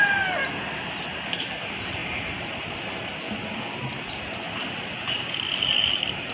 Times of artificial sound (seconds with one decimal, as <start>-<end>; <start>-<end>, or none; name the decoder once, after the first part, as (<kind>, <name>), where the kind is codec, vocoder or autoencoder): 0.0-0.4 (vocoder, BigVGAN v2); 1.0-3.1